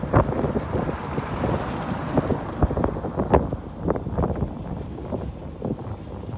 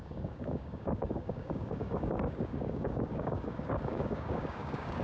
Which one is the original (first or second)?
first